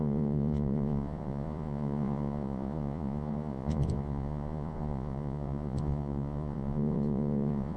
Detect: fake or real fake